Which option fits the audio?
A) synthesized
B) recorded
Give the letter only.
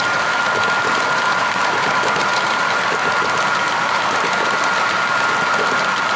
B